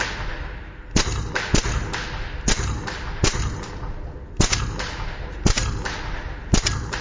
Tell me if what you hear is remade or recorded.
recorded